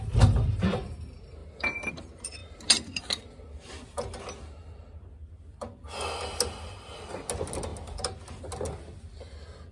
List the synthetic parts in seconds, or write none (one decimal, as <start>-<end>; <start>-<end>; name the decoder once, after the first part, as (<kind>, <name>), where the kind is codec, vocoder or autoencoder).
none